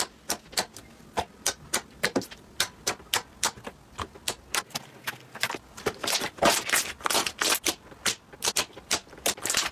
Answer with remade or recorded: recorded